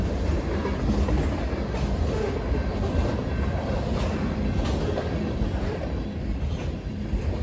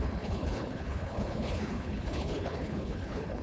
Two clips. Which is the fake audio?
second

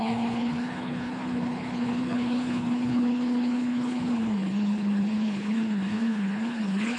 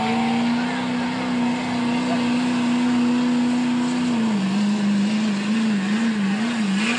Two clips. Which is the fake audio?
first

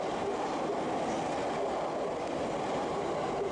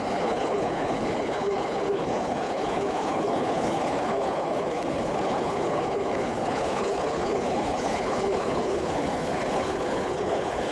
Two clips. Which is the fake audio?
second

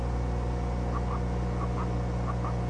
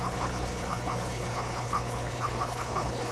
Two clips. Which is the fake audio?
second